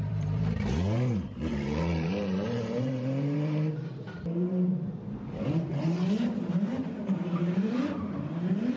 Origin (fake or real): fake